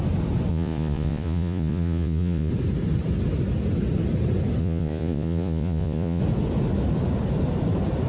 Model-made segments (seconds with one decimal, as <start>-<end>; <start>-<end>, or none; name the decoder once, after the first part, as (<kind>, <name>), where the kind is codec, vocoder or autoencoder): 0.5-2.5 (vocoder, Vocos); 4.6-6.2